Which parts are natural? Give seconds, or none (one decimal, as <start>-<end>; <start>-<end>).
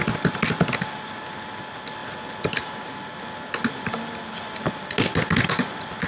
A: 0.0-6.1